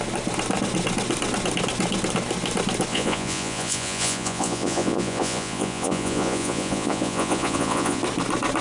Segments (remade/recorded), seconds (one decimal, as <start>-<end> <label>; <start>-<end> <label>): 0.0-2.9 recorded; 2.9-8.0 remade; 8.0-8.6 recorded